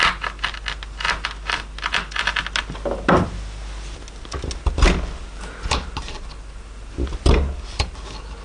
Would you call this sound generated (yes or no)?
no